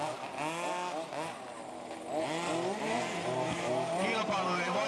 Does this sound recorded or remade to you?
recorded